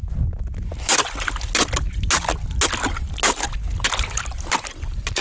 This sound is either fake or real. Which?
real